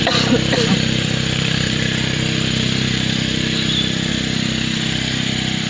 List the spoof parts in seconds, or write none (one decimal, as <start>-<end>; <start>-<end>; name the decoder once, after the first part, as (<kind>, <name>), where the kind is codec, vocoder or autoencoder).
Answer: 0.7-4.1 (vocoder, BigVGAN v2)